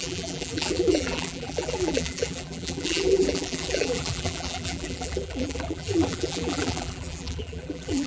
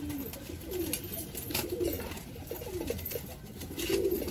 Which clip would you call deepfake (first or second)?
first